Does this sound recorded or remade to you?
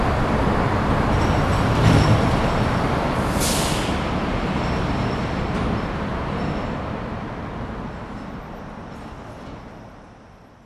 recorded